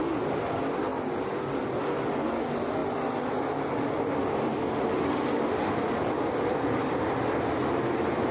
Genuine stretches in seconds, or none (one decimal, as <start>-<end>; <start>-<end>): 0.0-8.3